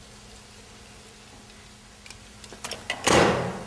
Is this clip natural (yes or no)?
yes